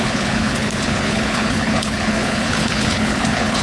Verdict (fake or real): fake